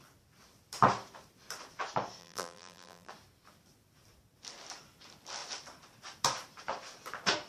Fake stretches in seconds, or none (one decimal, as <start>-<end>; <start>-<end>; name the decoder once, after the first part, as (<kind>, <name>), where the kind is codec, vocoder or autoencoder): 2.2-3.1 (vocoder, BigVGAN v2)